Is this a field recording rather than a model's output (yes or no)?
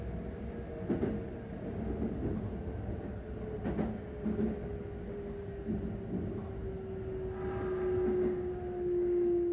yes